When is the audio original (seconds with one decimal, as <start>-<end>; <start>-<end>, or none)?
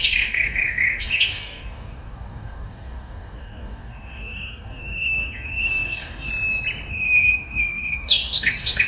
6.3-6.9